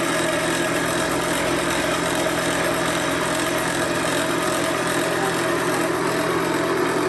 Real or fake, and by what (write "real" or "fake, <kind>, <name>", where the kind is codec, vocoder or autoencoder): real